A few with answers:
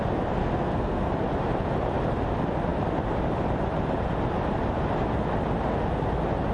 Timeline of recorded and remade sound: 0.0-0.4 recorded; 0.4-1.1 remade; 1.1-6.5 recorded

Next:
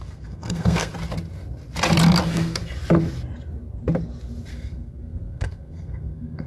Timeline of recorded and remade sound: 0.0-0.9 remade; 0.9-2.2 recorded; 2.2-2.6 remade; 2.6-4.5 recorded; 4.5-6.5 remade

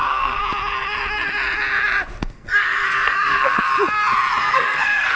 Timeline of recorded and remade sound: 0.0-0.4 remade; 0.4-2.2 recorded; 2.2-3.7 remade; 3.7-4.4 recorded; 4.4-5.2 remade

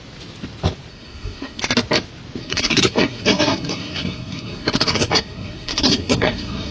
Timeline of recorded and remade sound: 0.0-0.9 recorded; 0.9-1.6 remade; 1.6-2.4 recorded; 2.4-6.7 remade

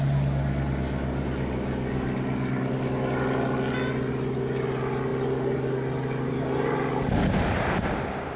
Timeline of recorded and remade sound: 0.0-8.4 recorded

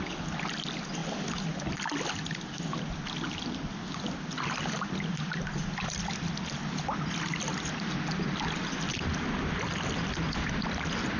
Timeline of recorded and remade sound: 0.0-11.2 recorded